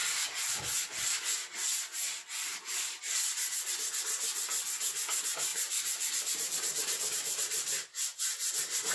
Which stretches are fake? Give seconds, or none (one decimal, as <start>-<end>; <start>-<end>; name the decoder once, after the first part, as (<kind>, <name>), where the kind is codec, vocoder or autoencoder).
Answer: 0.0-3.0 (vocoder, BigVGAN v2); 5.5-8.5